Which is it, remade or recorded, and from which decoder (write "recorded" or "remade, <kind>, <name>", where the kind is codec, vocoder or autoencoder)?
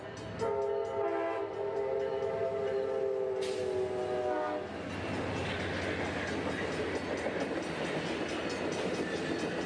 recorded